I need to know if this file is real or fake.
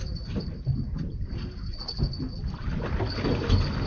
real